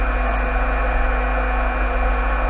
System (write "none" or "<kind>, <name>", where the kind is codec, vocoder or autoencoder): none